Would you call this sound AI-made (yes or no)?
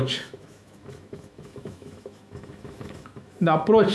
yes